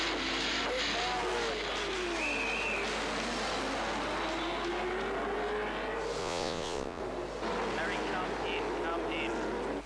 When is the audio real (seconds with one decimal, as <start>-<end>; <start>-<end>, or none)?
0.0-6.2; 7.0-9.9